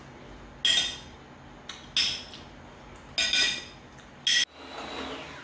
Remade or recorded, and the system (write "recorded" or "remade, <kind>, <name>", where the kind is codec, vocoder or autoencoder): recorded